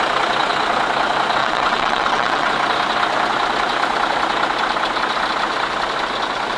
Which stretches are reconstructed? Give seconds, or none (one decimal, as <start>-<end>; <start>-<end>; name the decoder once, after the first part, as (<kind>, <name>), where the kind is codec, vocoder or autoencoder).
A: 1.4-2.5 (vocoder, WaveNeXt)